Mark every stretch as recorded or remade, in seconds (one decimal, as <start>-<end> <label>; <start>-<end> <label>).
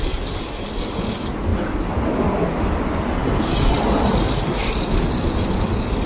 0.0-6.1 recorded